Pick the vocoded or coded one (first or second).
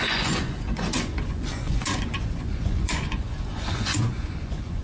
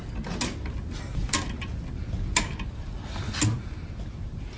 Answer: first